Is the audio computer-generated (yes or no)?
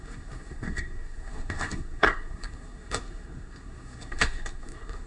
yes